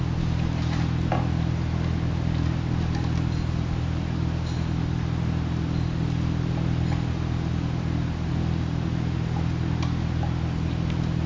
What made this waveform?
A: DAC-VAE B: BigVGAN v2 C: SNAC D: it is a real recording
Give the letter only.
D